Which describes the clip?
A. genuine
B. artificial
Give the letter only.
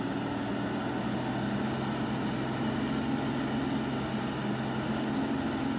A